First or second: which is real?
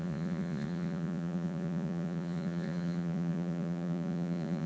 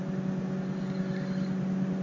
second